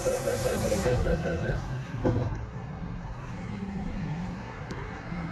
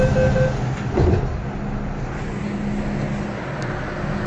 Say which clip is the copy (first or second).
first